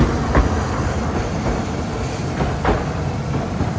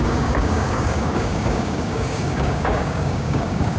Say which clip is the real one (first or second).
first